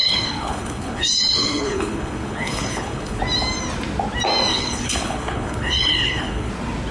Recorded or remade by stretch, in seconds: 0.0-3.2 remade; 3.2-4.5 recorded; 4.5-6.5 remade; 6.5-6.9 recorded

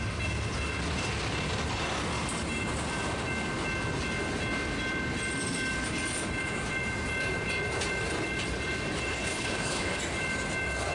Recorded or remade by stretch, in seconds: 0.0-9.1 recorded; 9.1-10.0 remade; 10.0-10.9 recorded

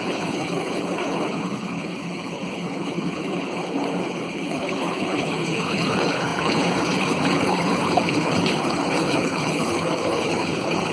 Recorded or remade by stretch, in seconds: 0.0-10.9 remade

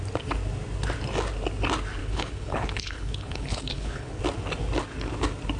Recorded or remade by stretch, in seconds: 0.0-2.0 recorded; 2.0-4.2 remade; 4.2-5.6 recorded